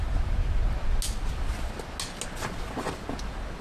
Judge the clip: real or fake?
real